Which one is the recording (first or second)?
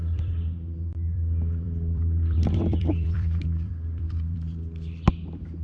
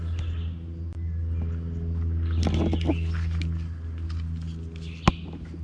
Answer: second